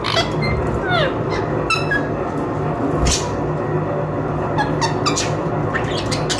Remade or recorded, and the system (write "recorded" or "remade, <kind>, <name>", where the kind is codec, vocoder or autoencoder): recorded